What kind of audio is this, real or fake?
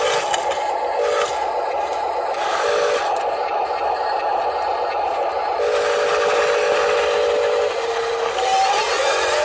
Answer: real